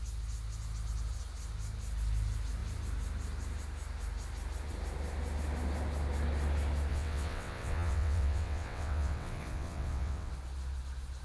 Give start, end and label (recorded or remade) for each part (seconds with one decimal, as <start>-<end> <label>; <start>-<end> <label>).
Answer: 0.0-6.9 recorded; 6.9-10.3 remade; 10.3-11.2 recorded